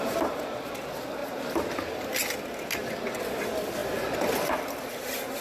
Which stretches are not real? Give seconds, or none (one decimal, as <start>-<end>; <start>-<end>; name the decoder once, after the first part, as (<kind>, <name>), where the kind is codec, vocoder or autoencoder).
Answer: none